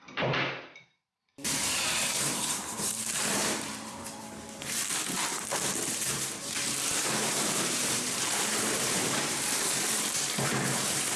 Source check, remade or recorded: remade